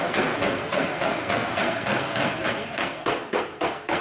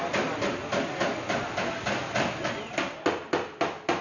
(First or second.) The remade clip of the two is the first